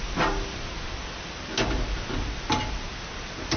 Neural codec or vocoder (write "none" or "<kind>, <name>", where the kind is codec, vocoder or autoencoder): none